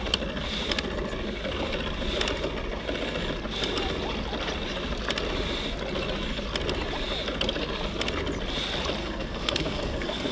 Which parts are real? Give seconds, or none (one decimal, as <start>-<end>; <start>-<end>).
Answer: 0.0-9.0